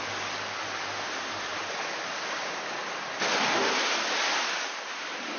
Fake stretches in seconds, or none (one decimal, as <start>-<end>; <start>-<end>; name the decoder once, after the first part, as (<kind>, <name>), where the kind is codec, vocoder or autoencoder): none